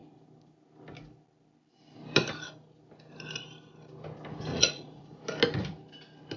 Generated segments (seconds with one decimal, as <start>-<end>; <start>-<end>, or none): 4.5-5.2